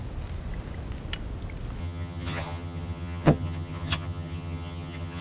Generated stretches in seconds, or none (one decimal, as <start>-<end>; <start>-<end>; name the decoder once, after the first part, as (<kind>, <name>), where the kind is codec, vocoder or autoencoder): 1.8-5.2 (vocoder, HiFi-GAN)